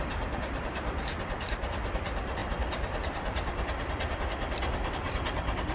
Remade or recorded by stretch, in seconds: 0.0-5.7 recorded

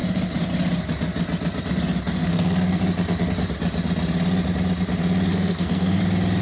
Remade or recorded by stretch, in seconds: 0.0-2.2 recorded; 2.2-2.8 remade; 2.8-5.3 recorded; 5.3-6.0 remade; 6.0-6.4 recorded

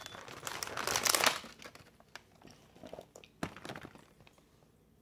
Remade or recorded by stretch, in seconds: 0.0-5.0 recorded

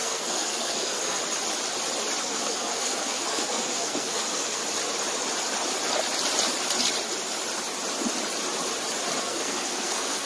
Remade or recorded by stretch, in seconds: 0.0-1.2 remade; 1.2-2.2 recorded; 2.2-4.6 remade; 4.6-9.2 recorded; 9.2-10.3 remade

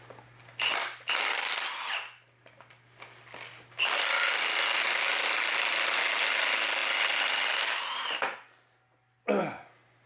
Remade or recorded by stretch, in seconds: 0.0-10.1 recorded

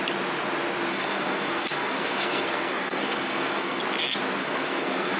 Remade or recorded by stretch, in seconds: 0.0-0.9 recorded; 0.9-3.8 remade; 3.8-4.4 recorded; 4.4-5.2 remade

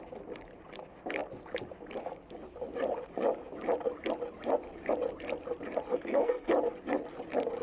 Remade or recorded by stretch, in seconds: 0.0-5.9 recorded; 5.9-6.5 remade; 6.5-7.6 recorded

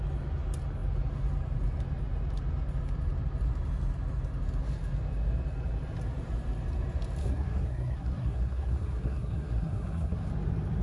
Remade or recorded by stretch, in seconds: 0.0-7.2 recorded; 7.2-10.3 remade; 10.3-10.8 recorded